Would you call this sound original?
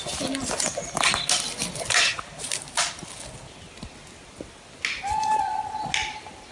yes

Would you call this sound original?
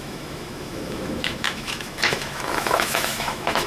no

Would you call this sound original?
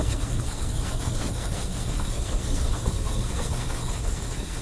no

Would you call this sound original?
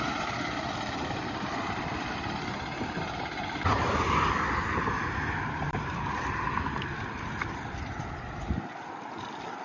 no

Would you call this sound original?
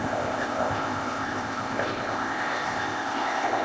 no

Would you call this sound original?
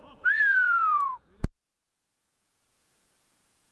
no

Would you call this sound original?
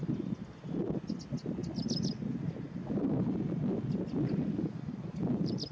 yes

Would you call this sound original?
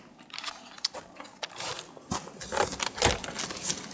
yes